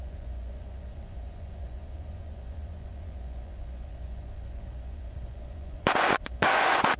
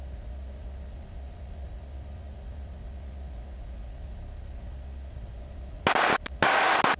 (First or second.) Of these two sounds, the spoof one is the first